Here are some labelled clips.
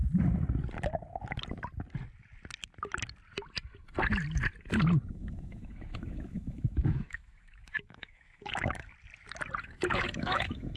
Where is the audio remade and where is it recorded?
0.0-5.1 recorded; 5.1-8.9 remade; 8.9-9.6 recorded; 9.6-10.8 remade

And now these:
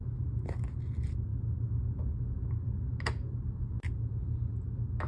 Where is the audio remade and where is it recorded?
0.0-5.1 recorded